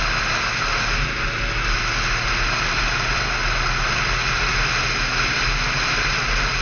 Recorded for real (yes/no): yes